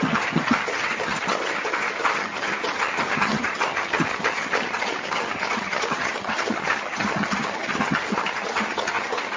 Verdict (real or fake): fake